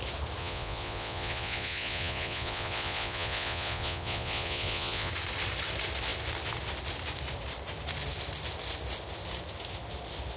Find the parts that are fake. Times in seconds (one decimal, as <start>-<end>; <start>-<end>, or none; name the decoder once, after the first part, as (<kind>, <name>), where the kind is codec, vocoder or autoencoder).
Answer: 0.4-5.1 (vocoder, Vocos)